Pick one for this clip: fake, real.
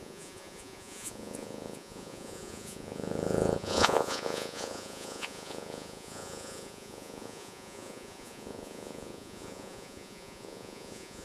fake